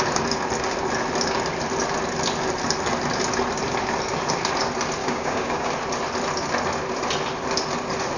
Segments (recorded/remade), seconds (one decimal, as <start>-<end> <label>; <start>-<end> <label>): 0.0-5.0 recorded; 5.0-5.7 remade; 5.7-8.2 recorded